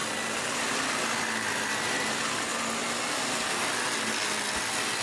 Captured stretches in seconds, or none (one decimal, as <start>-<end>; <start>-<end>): 0.9-5.0